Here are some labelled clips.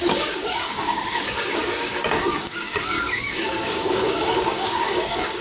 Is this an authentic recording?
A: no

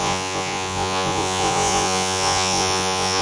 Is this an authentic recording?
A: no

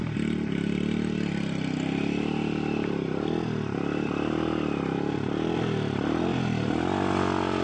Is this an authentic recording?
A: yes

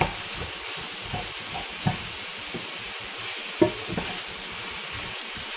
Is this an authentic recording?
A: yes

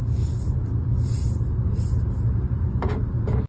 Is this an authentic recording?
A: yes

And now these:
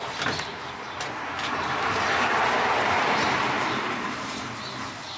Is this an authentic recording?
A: no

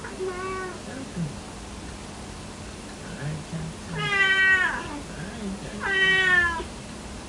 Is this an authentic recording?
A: yes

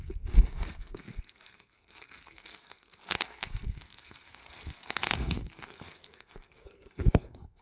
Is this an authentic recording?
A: no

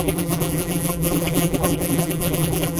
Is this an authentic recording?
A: no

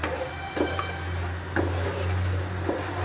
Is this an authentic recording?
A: yes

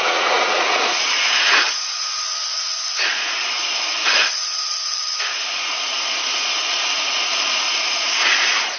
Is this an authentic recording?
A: no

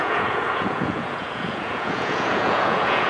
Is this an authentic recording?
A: no